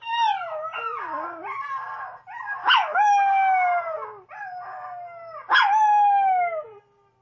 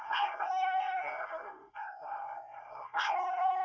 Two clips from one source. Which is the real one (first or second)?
first